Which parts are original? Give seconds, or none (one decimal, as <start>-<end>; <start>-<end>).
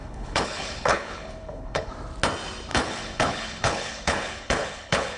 1.9-2.7